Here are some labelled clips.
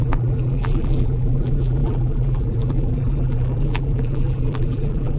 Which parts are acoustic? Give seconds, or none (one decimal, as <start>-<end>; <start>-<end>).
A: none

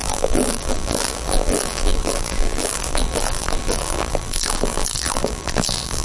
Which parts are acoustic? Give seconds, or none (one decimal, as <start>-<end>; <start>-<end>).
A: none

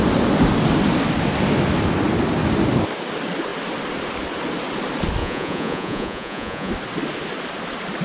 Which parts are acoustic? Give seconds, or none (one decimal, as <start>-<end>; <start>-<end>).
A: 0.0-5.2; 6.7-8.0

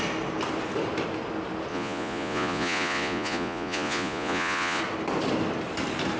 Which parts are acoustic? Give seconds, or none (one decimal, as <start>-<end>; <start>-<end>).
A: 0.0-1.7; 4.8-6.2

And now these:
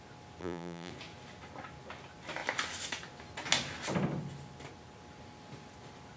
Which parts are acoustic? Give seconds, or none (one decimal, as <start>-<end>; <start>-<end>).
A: 0.0-0.4; 0.9-6.2

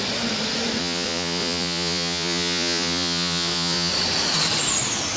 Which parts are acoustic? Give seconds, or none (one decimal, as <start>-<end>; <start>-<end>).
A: 0.0-0.8; 3.9-5.2